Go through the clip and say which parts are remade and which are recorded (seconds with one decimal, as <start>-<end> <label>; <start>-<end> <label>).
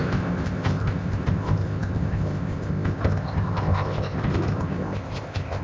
0.0-5.6 remade